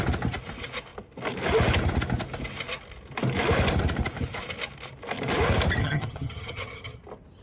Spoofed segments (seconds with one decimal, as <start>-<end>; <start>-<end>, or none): 5.8-7.0